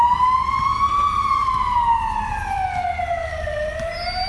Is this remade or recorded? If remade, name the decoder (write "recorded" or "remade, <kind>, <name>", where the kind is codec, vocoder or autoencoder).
recorded